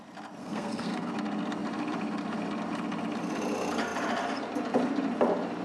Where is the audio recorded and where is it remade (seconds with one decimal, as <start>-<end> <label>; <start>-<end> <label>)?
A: 0.0-0.4 recorded; 0.4-1.1 remade; 1.1-5.6 recorded